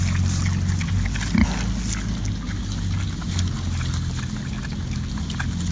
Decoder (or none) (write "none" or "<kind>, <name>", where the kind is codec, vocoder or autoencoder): none